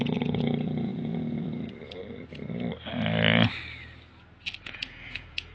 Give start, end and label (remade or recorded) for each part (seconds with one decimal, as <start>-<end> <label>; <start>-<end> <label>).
0.0-2.0 remade; 2.0-4.6 recorded; 4.6-5.5 remade